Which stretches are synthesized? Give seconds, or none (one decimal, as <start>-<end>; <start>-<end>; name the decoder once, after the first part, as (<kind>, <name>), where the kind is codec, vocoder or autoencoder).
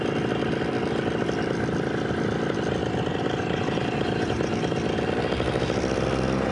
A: 3.1-4.6 (vocoder, BigVGAN v2)